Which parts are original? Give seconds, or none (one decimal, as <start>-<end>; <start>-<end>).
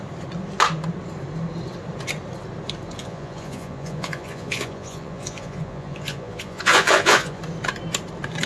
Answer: 0.0-3.0; 7.4-8.5